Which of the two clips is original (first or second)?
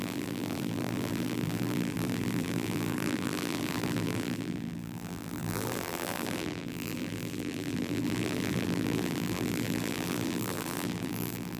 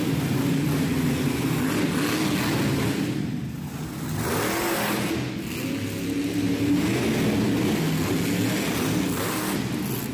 second